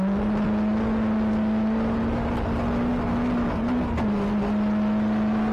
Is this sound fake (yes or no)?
no